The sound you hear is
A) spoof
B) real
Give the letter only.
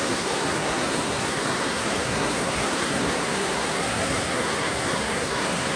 A